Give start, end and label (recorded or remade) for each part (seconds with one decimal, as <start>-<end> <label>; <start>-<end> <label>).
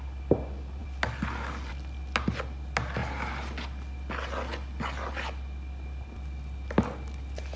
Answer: 0.0-7.6 recorded